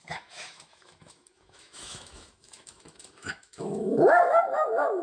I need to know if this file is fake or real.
fake